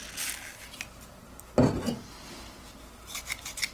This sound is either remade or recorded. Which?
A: recorded